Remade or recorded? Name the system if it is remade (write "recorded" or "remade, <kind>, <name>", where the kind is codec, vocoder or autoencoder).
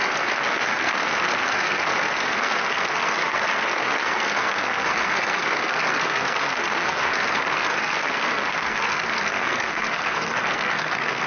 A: remade, codec, SNAC